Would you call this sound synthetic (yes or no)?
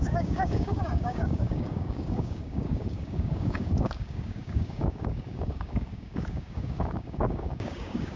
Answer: yes